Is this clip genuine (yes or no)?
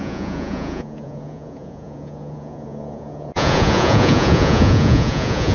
no